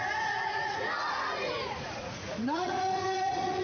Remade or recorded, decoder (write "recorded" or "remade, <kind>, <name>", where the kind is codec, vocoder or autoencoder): remade, vocoder, Vocos